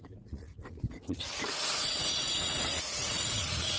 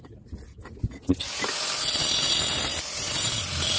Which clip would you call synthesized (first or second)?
first